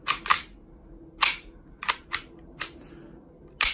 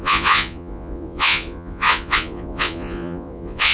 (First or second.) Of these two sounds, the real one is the first